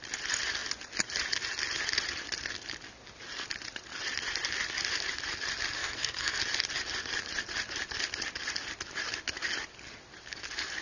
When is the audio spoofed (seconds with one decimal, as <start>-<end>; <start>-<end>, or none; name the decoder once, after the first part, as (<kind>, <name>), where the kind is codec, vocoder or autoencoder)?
5.8-6.4 (codec, SNAC)